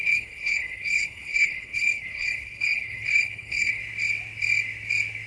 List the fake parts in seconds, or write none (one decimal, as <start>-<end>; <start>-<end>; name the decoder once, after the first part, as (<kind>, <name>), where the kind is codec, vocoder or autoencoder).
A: 0.0-3.8 (codec, HILCodec)